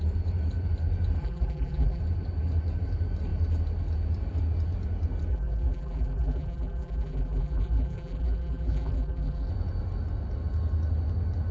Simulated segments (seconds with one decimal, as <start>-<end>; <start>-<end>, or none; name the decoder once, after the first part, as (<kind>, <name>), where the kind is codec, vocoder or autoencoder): 1.2-2.0 (vocoder, BigVGAN v2); 5.3-9.5